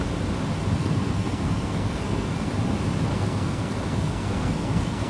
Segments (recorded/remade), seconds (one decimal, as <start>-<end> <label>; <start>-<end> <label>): 0.0-0.8 recorded; 0.8-2.5 remade; 2.5-3.1 recorded; 3.1-5.1 remade